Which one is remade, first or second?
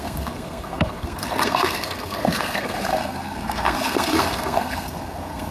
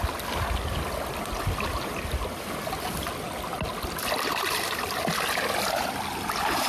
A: first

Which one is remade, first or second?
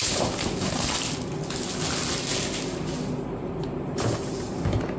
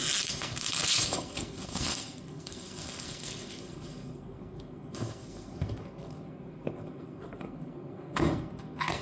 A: second